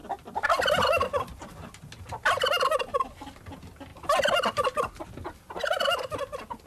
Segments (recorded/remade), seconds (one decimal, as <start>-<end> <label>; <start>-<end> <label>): 0.0-3.9 recorded; 3.9-4.9 remade; 4.9-6.7 recorded